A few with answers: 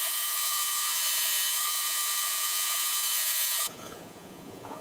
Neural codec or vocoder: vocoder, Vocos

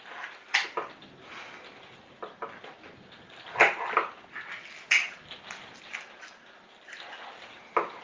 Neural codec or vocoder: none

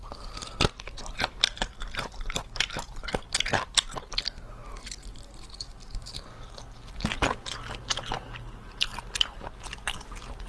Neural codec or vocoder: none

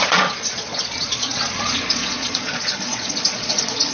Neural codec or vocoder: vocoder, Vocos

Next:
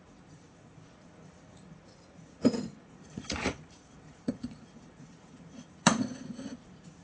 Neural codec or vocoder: vocoder, Vocos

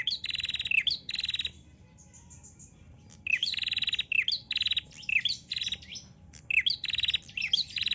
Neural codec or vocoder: none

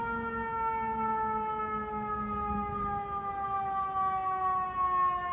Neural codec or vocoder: none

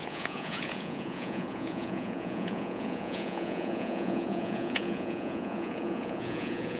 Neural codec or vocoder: vocoder, Vocos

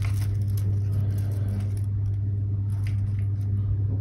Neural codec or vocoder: none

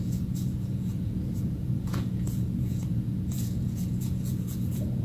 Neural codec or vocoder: vocoder, Vocos